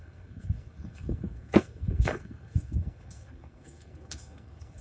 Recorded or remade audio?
remade